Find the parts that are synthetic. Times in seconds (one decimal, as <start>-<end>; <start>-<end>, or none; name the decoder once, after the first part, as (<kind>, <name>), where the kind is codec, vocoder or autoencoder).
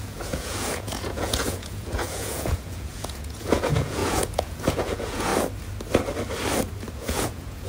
0.0-5.3 (vocoder, Vocos); 6.9-7.7